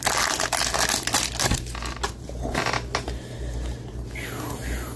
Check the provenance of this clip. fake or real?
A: real